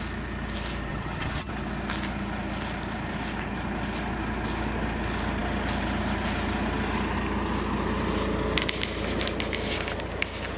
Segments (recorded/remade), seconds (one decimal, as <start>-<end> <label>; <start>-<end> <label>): 0.0-0.9 recorded; 0.9-1.5 remade; 1.5-10.6 recorded